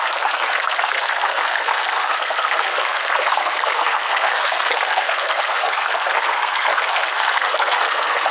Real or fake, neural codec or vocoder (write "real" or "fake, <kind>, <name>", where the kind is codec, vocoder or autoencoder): fake, codec, SNAC